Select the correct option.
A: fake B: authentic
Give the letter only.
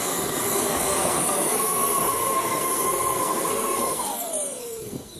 A